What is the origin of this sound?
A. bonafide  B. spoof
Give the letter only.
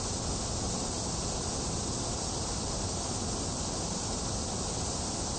A